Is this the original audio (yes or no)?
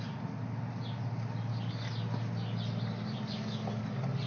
yes